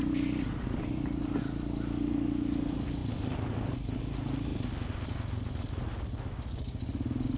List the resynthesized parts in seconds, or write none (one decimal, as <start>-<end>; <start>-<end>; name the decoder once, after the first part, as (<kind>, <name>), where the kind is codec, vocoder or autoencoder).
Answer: none